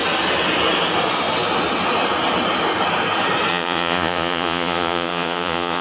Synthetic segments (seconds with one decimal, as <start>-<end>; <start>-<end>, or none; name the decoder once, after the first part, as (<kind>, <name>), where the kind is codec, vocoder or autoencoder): 3.5-5.8 (vocoder, Vocos)